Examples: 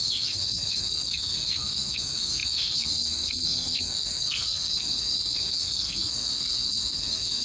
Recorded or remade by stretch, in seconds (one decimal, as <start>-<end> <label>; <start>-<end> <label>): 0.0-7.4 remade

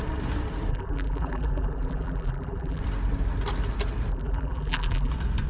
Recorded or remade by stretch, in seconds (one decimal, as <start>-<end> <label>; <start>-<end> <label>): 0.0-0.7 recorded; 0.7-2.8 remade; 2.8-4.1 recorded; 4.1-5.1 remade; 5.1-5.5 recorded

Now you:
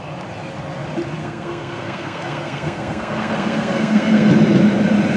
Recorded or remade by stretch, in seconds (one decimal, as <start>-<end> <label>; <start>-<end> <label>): 0.0-1.2 recorded; 1.2-4.3 remade; 4.3-5.2 recorded

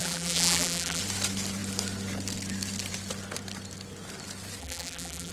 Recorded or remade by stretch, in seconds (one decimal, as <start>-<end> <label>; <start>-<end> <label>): 0.0-1.0 remade; 1.0-4.6 recorded; 4.6-5.3 remade

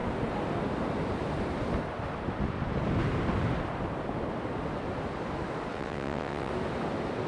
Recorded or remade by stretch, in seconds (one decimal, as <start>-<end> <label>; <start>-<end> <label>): 0.0-5.7 recorded; 5.7-6.5 remade; 6.5-7.3 recorded

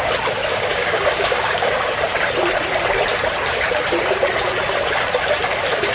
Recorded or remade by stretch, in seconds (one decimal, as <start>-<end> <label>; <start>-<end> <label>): 0.0-0.5 recorded; 0.5-1.7 remade; 1.7-5.9 recorded